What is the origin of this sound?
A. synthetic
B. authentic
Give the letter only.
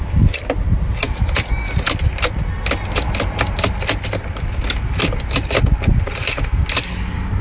B